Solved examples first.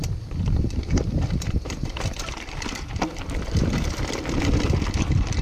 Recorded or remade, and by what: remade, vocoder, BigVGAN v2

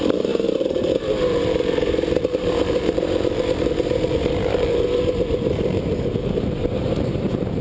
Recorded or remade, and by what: remade, vocoder, BigVGAN v2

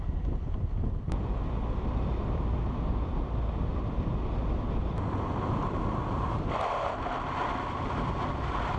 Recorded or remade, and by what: recorded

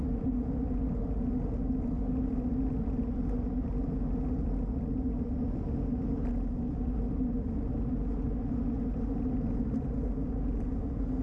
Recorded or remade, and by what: recorded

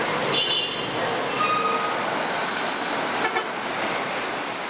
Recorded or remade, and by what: recorded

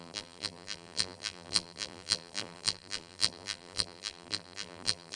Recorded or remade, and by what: remade, vocoder, BigVGAN v2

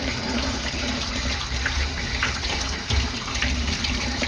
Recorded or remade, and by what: remade, vocoder, BigVGAN v2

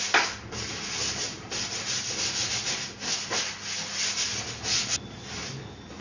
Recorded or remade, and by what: recorded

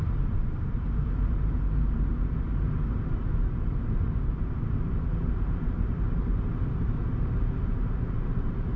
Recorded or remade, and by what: remade, vocoder, BigVGAN v2